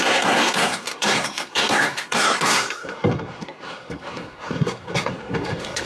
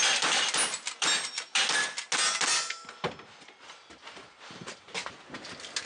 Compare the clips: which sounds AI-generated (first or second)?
first